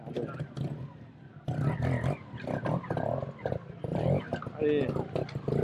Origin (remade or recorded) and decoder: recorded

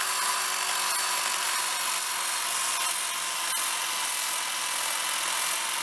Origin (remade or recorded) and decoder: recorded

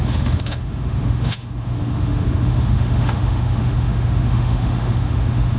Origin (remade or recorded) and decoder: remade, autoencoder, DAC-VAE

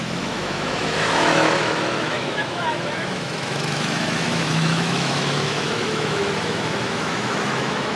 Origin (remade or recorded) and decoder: remade, autoencoder, DAC-VAE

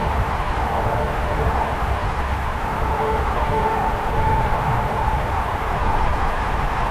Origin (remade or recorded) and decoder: remade, autoencoder, DAC-VAE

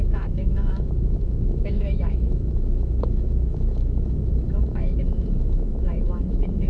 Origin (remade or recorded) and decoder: remade, autoencoder, DAC-VAE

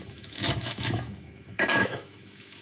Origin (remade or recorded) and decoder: remade, autoencoder, DAC-VAE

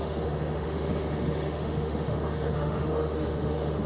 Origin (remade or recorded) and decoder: remade, autoencoder, DAC-VAE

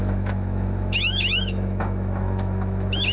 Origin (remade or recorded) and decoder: remade, autoencoder, DAC-VAE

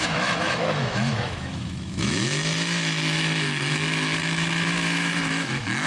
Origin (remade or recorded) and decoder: remade, autoencoder, DAC-VAE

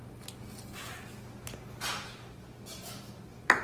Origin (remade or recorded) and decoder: recorded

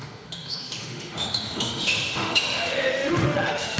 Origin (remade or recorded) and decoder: remade, autoencoder, DAC-VAE